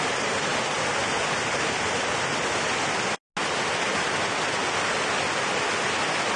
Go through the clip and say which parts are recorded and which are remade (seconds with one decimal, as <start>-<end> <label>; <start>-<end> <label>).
0.0-6.4 recorded